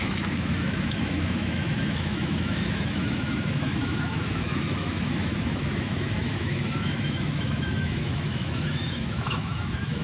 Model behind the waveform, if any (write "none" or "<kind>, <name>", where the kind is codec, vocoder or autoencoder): autoencoder, DAC-VAE